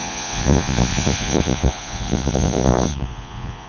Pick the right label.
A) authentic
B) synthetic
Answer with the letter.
B